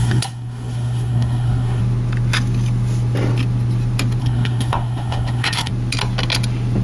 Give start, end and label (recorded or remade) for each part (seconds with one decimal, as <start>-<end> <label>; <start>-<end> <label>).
0.0-1.8 remade; 1.8-4.2 recorded; 4.2-5.7 remade; 5.7-6.8 recorded